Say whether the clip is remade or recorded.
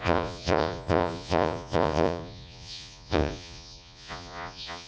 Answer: remade